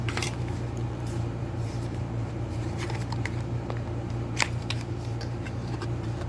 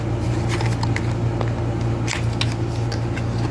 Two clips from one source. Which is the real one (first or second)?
second